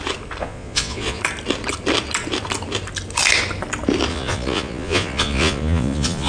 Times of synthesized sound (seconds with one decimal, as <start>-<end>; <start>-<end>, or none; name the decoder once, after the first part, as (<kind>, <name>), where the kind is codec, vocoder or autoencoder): 0.4-1.2 (vocoder, Vocos); 4.1-6.3

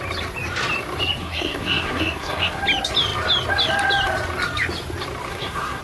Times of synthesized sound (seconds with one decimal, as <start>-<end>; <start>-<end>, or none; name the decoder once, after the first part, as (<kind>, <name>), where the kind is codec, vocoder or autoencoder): 1.2-2.6 (codec, SNAC); 5.3-5.8

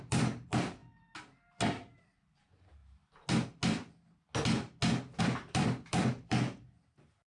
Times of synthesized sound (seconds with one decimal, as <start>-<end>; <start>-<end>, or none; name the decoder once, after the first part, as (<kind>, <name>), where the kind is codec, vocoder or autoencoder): 0.0-0.8 (vocoder, BigVGAN v2); 2.0-2.8; 5.2-7.3

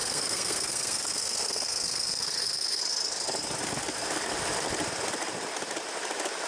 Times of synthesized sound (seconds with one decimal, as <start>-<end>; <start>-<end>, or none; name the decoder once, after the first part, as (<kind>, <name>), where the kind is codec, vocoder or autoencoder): 0.0-2.8 (codec, SNAC)

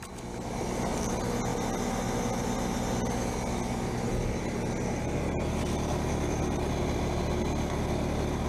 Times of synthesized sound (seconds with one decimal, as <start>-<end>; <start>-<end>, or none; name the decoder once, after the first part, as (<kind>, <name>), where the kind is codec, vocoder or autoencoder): none